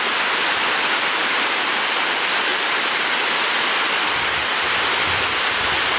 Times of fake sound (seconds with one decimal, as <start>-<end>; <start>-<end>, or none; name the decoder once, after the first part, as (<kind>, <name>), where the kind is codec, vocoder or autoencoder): none